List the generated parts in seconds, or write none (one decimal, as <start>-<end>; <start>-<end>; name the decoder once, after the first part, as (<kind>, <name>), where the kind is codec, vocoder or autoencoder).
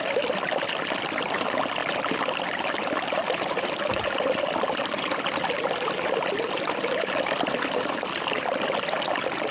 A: none